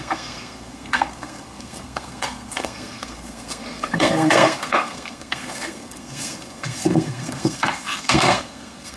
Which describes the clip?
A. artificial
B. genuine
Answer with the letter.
A